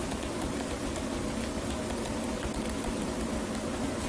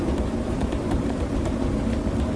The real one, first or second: first